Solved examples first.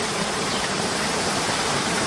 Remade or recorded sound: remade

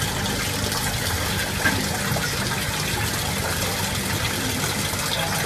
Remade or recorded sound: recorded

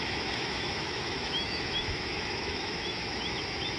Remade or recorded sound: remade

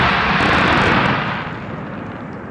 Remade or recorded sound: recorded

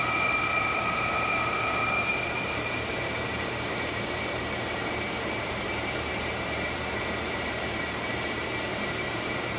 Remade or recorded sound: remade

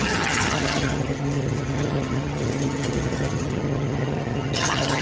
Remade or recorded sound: remade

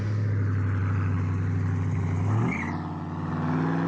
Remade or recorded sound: recorded